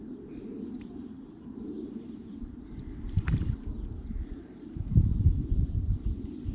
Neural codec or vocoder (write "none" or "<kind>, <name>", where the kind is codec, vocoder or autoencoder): vocoder, BigVGAN v2